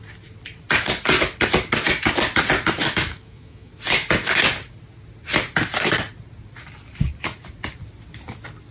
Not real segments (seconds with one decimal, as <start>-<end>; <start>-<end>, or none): 2.8-3.7